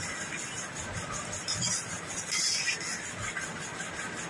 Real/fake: real